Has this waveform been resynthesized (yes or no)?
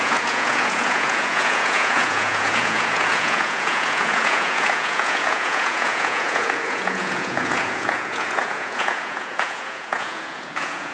yes